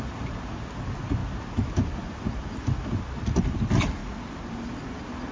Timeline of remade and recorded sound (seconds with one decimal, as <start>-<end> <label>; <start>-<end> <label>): 0.0-5.3 recorded